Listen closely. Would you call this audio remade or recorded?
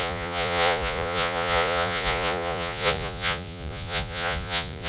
remade